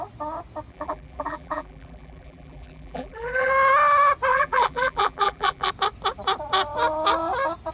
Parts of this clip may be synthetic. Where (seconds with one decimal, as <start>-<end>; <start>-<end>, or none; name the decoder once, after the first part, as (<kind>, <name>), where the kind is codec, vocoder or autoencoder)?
0.7-3.5 (vocoder, BigVGAN v2); 4.3-5.7